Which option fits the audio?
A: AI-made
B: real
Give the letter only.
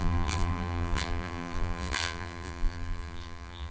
A